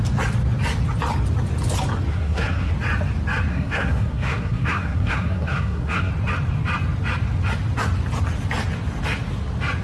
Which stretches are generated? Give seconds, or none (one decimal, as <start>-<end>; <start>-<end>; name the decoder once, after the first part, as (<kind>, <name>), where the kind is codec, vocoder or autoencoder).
2.1-2.7 (codec, SNAC); 3.5-6.1